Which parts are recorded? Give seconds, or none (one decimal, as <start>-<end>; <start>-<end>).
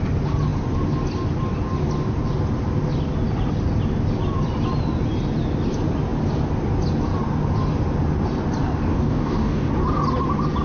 0.0-8.9; 9.7-10.6